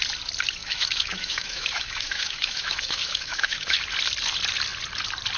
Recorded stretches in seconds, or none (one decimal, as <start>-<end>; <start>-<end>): 0.0-0.6; 3.8-5.4